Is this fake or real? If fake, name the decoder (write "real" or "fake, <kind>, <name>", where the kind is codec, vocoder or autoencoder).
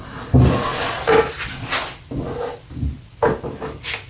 real